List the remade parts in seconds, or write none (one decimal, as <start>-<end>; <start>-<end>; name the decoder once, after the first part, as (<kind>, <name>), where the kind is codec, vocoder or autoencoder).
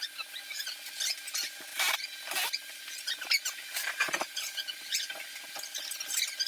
none